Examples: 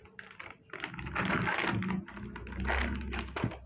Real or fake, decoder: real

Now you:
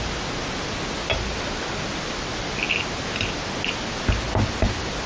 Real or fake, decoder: real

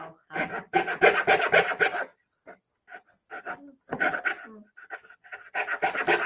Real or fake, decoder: real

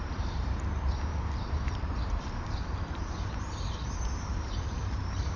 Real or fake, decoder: fake, vocoder, BigVGAN v2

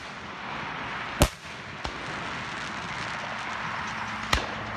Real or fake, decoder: real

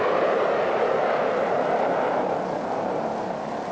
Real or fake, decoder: real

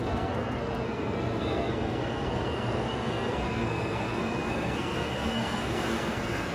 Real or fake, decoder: fake, codec, SNAC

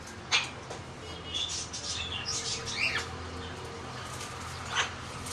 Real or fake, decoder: real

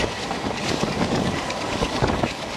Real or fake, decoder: fake, codec, DAC